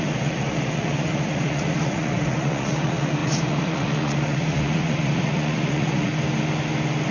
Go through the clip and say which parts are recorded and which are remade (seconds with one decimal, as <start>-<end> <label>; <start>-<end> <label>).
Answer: 0.0-6.1 remade; 6.1-7.1 recorded

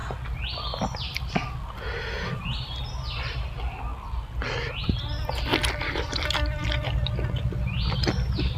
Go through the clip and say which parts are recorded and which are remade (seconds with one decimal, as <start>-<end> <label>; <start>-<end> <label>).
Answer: 0.0-8.6 recorded

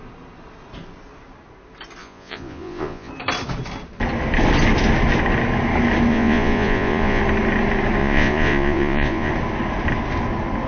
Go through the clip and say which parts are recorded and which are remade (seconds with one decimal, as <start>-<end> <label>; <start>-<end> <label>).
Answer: 0.0-2.0 recorded; 2.0-3.1 remade; 3.1-6.1 recorded; 6.1-7.2 remade; 7.2-8.0 recorded; 8.0-9.3 remade; 9.3-10.7 recorded